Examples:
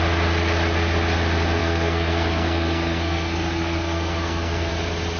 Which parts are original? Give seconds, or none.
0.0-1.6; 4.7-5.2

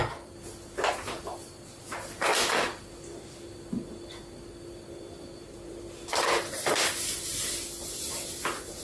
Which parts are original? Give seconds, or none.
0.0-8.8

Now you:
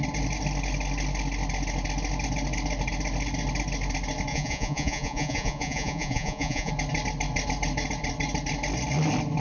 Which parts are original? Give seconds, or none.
0.0-4.3; 6.7-9.4

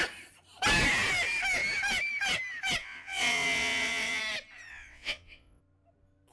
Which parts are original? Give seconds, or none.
0.0-2.8; 4.2-4.7; 5.6-6.3